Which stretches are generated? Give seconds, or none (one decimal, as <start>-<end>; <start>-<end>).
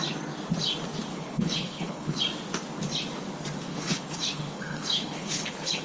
1.1-2.2; 3.7-5.8